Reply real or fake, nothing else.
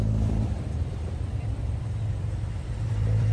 fake